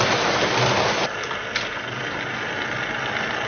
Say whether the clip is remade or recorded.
recorded